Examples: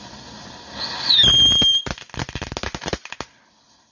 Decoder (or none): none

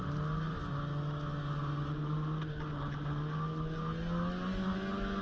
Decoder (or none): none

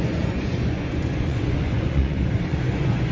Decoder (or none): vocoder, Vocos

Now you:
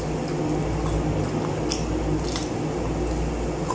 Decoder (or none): none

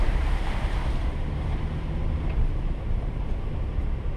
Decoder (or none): vocoder, BigVGAN v2